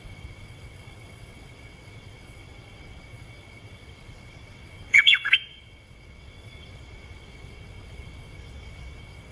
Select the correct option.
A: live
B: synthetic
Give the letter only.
B